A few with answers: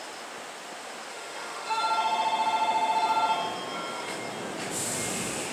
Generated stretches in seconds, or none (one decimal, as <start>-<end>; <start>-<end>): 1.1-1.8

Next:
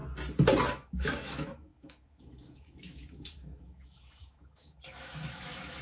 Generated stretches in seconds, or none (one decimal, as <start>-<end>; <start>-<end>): 0.7-5.8

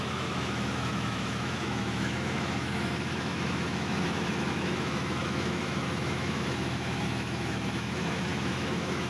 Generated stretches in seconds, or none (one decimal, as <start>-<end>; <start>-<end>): 0.0-9.1

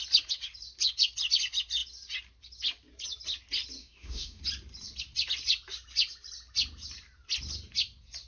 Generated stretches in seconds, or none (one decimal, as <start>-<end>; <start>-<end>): 3.8-4.4